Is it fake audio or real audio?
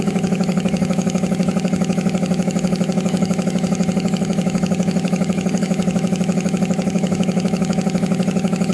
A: fake